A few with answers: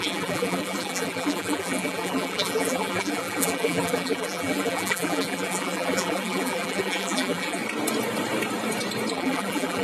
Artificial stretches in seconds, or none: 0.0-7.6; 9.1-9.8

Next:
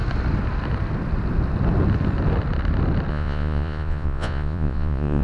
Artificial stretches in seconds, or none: 3.1-5.2